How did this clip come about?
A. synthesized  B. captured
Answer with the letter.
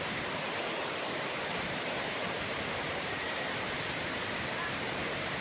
A